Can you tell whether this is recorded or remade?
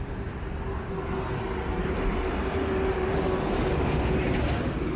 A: recorded